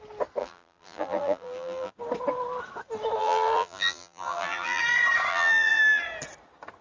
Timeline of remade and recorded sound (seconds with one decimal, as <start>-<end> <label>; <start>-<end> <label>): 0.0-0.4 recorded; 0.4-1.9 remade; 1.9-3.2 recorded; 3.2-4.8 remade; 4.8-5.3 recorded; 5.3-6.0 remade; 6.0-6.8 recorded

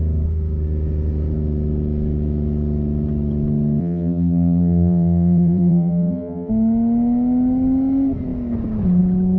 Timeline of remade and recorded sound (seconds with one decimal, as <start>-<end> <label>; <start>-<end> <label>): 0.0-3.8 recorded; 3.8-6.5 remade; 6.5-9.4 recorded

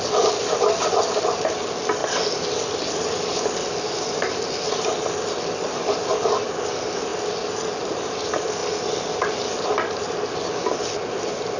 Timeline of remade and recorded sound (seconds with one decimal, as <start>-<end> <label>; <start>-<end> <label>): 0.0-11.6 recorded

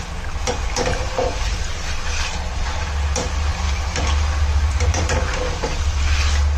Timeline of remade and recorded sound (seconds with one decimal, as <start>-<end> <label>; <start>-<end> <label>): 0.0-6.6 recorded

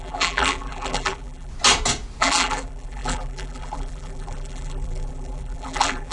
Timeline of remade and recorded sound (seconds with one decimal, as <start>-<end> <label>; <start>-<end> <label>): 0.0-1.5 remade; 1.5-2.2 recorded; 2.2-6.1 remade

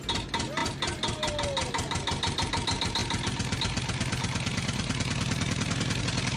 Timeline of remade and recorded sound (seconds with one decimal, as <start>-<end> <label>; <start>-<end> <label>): 0.0-6.4 recorded

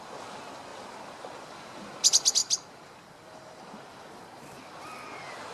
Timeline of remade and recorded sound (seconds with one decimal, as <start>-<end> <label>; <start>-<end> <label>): 0.0-2.4 recorded; 2.4-3.9 remade; 3.9-5.5 recorded